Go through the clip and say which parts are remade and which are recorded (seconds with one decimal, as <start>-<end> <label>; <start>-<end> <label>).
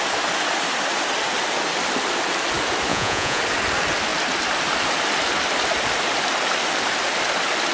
0.0-2.9 recorded; 2.9-3.4 remade; 3.4-7.7 recorded